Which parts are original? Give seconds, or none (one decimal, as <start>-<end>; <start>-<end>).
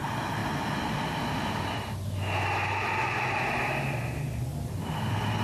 0.0-5.4